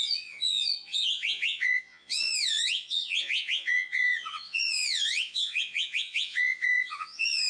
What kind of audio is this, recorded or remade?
remade